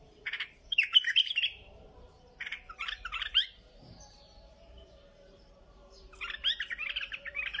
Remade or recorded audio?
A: remade